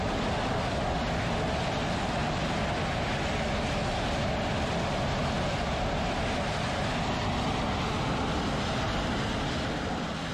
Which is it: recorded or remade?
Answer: recorded